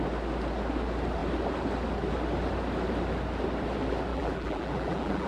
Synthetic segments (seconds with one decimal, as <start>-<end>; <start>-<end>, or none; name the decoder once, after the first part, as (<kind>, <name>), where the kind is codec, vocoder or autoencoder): 4.1-5.3 (vocoder, BigVGAN v2)